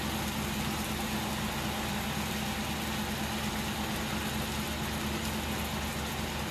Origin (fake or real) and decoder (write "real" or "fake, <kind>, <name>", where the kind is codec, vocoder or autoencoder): real